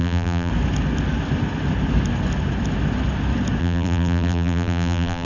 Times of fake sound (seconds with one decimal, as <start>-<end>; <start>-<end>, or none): 0.0-0.5; 3.6-5.2